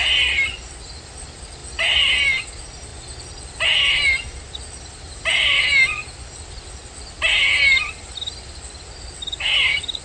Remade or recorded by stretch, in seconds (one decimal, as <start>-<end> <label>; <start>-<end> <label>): 0.0-10.0 recorded